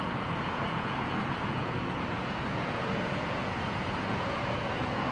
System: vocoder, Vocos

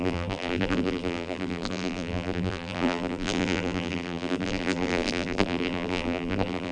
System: vocoder, BigVGAN v2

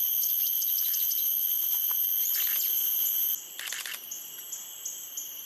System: none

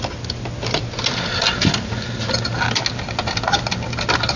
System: none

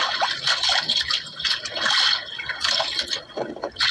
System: none